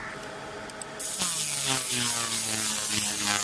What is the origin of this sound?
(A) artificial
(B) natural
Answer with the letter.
B